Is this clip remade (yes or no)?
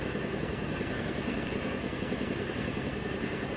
yes